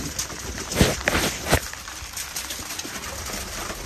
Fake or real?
fake